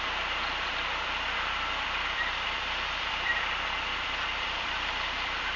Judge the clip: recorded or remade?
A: remade